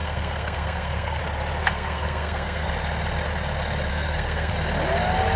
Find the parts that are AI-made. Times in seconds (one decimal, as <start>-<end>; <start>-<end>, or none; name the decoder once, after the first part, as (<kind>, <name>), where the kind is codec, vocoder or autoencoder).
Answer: 0.0-1.2 (codec, SNAC); 1.6-2.7; 3.9-4.5